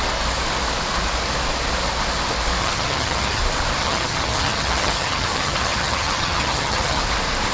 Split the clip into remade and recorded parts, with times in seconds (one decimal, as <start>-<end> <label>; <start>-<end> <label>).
0.0-2.6 recorded; 2.6-3.4 remade; 3.4-3.8 recorded; 3.8-7.0 remade; 7.0-7.5 recorded